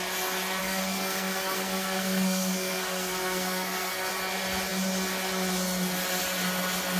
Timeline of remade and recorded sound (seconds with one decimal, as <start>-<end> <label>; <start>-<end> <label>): 0.0-0.6 recorded; 0.6-4.1 remade; 4.1-7.0 recorded